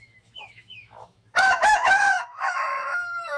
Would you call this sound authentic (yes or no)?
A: no